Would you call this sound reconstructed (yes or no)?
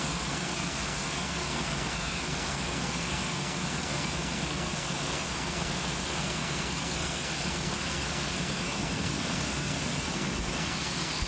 yes